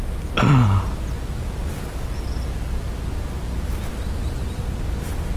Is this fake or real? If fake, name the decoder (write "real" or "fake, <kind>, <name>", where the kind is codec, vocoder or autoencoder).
real